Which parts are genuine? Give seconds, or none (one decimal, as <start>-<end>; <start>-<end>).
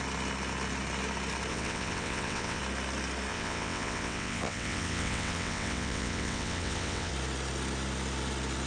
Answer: 0.0-1.5; 2.6-3.3; 7.1-8.7